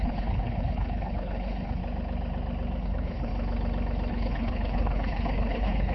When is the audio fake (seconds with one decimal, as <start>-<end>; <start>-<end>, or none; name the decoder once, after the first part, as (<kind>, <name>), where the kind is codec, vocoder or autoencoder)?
0.0-1.8 (codec, HILCodec); 2.8-3.3; 4.1-5.9